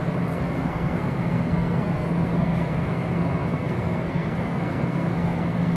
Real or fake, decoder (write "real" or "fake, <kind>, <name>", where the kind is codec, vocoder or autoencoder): fake, codec, SNAC